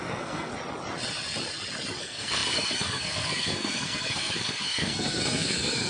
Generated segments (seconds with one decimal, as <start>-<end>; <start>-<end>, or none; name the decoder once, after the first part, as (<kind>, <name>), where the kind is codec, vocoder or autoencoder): 0.0-0.5 (codec, SNAC); 2.0-5.9